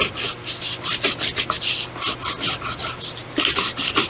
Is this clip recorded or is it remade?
recorded